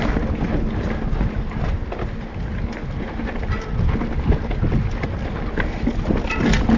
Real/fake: real